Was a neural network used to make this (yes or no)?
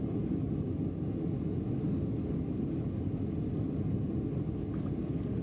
no